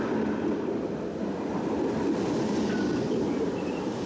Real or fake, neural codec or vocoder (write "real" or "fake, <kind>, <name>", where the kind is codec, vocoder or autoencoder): real